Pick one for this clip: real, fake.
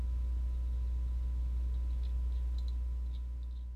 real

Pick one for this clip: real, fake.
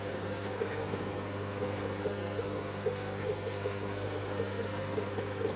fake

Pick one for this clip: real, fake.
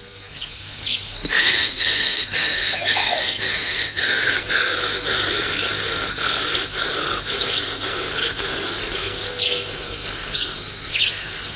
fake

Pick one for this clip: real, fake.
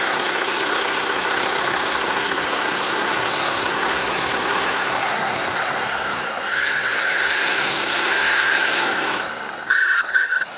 fake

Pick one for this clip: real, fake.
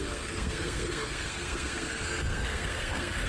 fake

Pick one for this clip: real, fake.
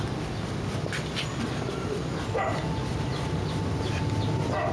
real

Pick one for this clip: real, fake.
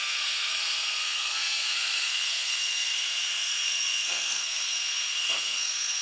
fake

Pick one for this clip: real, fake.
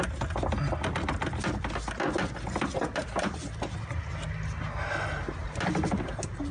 real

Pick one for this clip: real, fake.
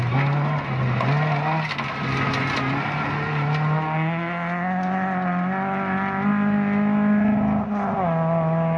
real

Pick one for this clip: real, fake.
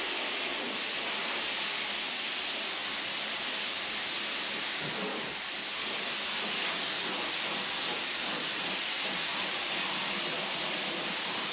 real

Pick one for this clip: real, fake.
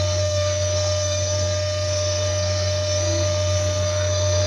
fake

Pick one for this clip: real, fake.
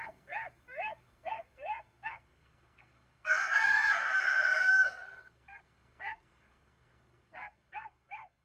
fake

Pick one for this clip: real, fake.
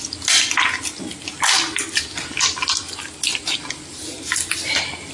real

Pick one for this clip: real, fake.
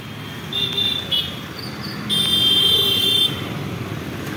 real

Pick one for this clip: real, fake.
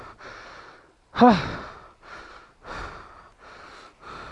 real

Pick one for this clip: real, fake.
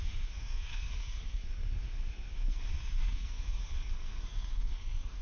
fake